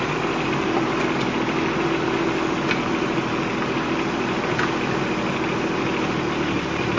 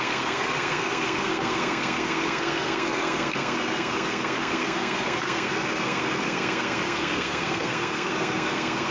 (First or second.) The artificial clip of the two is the second